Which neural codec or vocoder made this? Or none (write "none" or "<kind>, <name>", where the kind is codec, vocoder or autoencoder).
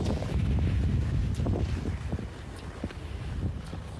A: none